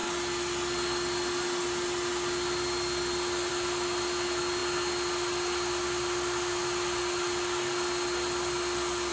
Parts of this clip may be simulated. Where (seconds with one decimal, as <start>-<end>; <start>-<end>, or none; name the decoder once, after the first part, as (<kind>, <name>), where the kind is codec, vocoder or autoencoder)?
none